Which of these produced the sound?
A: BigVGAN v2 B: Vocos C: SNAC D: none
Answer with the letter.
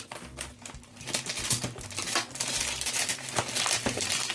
D